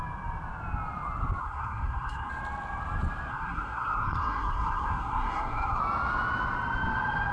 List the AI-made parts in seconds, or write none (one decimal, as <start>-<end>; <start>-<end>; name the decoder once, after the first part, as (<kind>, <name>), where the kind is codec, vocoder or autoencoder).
1.4-2.3 (codec, SNAC); 3.3-5.8